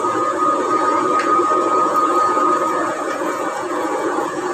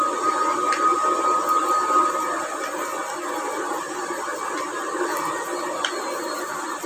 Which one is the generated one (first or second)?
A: first